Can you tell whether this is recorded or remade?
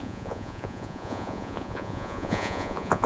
remade